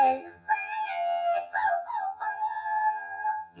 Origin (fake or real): fake